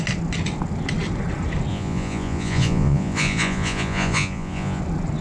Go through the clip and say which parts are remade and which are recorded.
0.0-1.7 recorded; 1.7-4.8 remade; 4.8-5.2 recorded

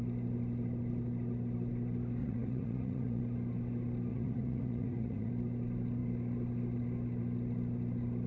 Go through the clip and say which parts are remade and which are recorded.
0.0-2.2 recorded; 2.2-3.2 remade; 3.2-4.1 recorded; 4.1-5.3 remade; 5.3-8.3 recorded

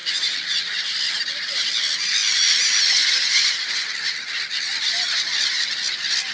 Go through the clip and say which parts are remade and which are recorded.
0.0-3.0 recorded; 3.0-3.9 remade; 3.9-6.3 recorded

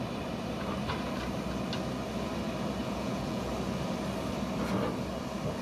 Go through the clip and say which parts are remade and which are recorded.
0.0-2.8 recorded; 2.8-3.5 remade; 3.5-5.6 recorded